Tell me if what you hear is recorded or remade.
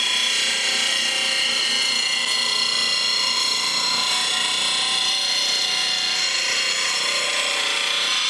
recorded